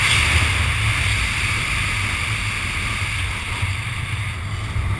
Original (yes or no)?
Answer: yes